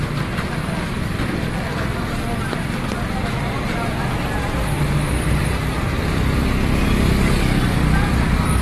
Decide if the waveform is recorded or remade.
recorded